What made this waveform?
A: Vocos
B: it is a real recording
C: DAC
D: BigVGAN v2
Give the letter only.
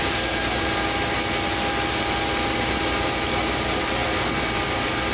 B